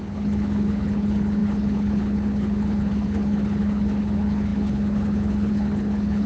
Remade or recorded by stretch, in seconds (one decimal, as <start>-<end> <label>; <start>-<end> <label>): 0.0-6.3 remade